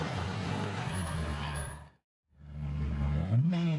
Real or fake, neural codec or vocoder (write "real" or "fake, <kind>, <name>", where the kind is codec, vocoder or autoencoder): fake, codec, SNAC